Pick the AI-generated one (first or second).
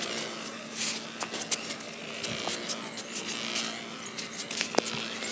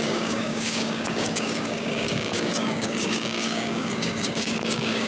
second